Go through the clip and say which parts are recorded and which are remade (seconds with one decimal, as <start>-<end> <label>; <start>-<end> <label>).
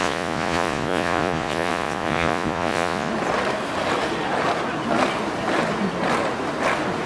0.0-3.1 remade; 3.1-7.1 recorded